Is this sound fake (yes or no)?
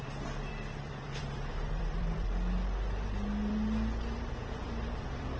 yes